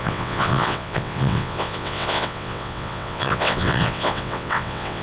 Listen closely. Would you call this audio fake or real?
fake